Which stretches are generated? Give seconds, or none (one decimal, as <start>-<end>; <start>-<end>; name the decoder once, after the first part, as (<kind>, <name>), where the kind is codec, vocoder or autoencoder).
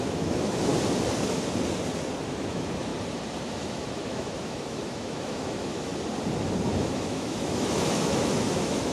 0.0-0.7 (autoencoder, DAC-VAE); 2.3-2.9; 3.5-5.9; 6.7-8.9